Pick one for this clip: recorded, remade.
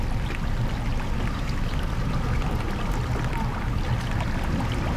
recorded